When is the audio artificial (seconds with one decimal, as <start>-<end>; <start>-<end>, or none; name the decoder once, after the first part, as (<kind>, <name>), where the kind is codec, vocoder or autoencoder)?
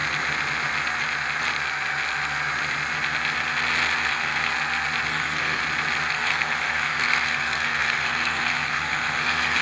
4.1-4.5 (codec, SNAC); 5.1-5.6; 6.1-9.6